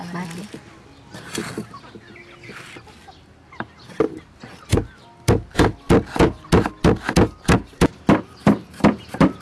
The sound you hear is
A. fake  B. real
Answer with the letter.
B